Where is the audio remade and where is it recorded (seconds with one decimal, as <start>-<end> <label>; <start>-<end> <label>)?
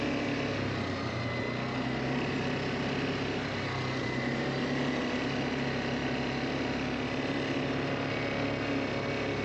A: 0.0-4.0 recorded; 4.0-5.0 remade; 5.0-9.4 recorded